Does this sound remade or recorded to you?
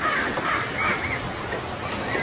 recorded